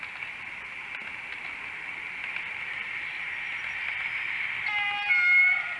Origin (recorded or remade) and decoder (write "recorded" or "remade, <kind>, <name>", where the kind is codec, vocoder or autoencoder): recorded